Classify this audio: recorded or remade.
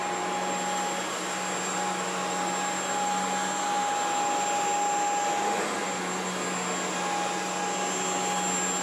recorded